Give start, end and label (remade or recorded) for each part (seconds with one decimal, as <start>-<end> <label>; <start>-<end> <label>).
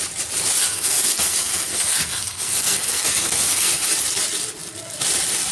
0.0-0.6 recorded; 0.6-3.9 remade; 3.9-5.5 recorded